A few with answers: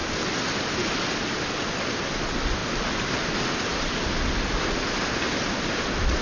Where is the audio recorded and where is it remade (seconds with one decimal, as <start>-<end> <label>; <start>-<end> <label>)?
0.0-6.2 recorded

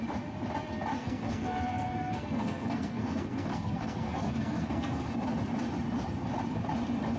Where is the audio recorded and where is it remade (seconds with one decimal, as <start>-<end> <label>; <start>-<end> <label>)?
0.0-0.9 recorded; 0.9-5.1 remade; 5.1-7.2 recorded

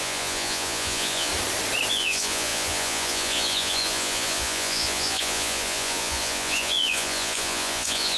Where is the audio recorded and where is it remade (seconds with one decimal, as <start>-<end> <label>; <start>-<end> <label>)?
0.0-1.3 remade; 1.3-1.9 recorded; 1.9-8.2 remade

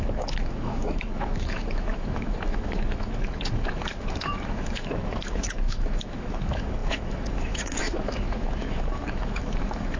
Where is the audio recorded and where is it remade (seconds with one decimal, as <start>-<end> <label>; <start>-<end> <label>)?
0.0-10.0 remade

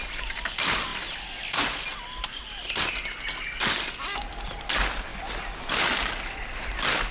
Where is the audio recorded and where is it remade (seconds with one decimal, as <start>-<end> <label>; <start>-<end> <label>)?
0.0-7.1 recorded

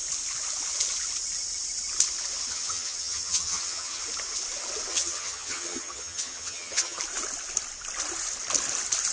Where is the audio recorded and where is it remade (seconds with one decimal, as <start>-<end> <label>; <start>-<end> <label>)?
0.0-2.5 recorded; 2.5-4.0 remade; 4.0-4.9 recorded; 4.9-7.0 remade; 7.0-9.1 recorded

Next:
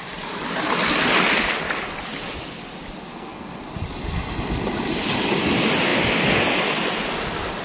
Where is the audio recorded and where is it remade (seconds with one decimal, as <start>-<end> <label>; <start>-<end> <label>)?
0.0-3.1 recorded; 3.1-3.6 remade; 3.6-7.6 recorded

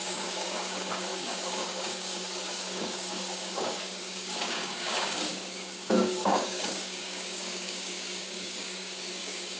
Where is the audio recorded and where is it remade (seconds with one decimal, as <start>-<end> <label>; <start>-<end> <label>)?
0.0-9.6 remade